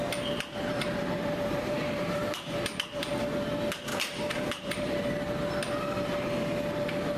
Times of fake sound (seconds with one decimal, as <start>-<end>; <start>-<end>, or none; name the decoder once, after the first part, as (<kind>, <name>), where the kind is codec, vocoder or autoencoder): 0.7-3.1 (vocoder, BigVGAN v2); 3.9-5.1